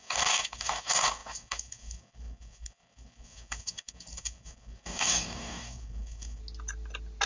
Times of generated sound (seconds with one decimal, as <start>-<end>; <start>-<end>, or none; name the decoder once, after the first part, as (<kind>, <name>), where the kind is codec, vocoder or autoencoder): 0.0-6.4 (codec, DAC)